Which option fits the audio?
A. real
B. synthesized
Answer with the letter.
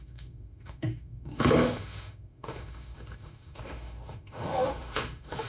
B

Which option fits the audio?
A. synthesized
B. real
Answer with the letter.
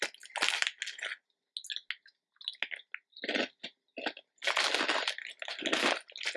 B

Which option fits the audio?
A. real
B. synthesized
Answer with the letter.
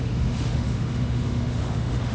B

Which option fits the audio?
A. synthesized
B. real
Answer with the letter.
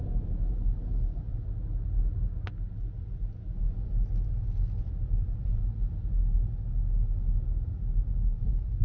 B